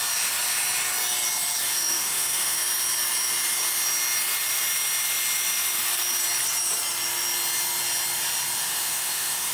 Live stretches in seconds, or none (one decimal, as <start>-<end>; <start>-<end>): 0.0-1.7; 2.6-8.6